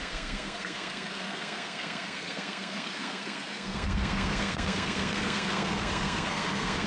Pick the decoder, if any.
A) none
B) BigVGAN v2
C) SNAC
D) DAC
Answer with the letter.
C